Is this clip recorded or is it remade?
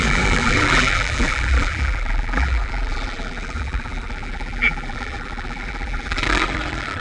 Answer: remade